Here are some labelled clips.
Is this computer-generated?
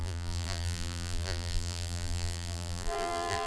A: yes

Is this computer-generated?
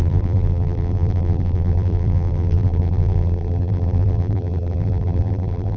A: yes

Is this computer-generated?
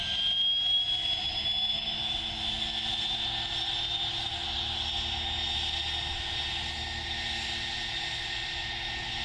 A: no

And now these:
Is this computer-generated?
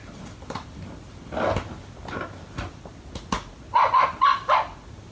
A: no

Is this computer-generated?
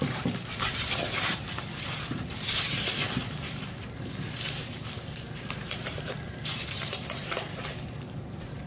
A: yes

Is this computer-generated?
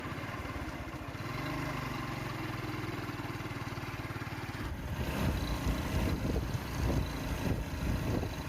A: no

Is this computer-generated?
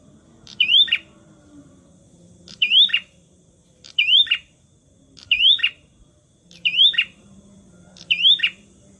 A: yes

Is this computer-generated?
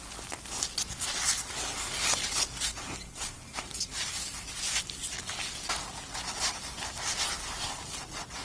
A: no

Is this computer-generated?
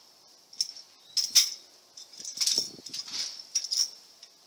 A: no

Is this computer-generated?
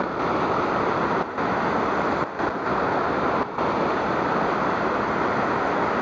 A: no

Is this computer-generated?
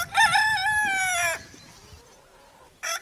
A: no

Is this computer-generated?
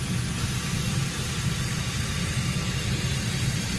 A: no